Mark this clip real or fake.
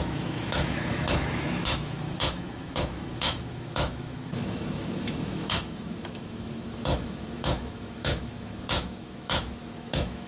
fake